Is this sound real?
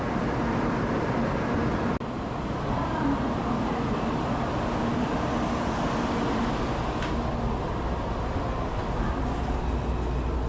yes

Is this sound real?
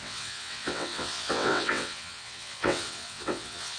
no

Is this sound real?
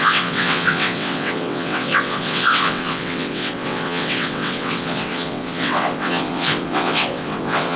no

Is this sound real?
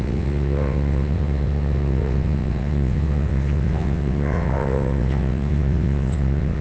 no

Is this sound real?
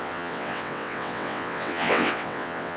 no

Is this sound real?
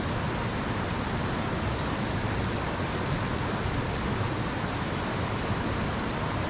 yes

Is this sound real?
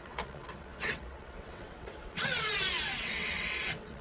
no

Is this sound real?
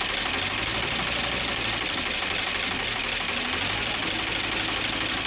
yes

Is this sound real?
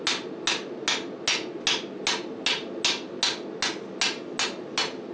yes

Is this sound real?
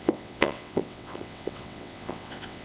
no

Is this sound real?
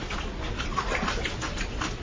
yes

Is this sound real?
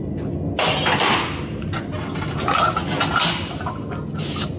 yes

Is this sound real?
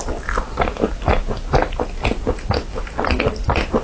yes